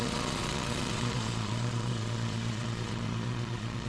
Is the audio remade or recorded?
remade